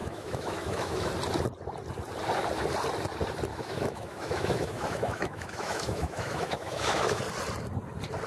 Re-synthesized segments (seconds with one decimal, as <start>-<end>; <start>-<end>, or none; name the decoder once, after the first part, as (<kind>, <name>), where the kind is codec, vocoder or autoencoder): 0.0-1.1 (autoencoder, DAC-VAE); 3.5-7.2